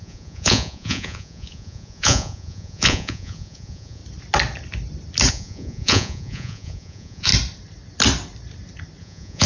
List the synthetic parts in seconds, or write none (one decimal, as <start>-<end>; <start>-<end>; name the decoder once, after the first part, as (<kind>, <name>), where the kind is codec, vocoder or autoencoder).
0.0-4.0 (vocoder, Vocos); 5.3-7.3; 9.0-9.5